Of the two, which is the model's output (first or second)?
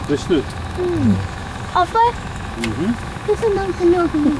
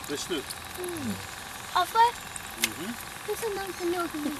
first